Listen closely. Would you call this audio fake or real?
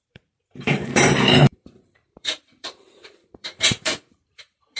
fake